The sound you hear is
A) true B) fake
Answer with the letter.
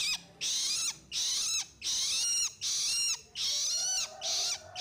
A